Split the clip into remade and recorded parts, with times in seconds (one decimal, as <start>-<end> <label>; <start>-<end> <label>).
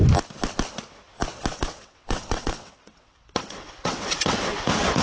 0.0-1.5 recorded; 1.5-4.5 remade; 4.5-5.0 recorded